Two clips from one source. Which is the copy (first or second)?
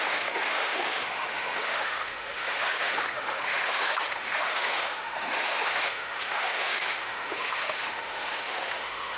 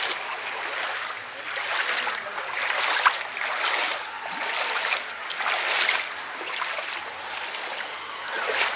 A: first